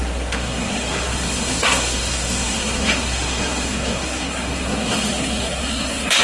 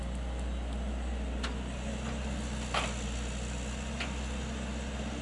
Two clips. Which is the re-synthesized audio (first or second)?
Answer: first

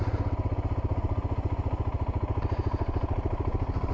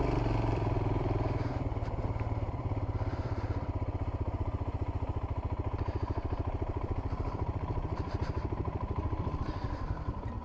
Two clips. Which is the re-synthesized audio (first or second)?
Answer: second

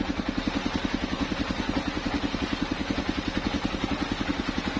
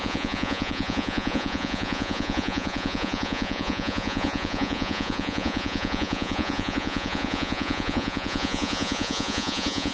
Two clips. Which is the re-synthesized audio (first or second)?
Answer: second